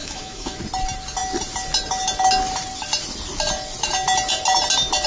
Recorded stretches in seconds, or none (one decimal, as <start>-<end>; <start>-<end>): 0.6-5.1